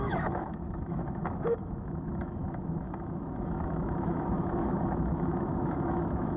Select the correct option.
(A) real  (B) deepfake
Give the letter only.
B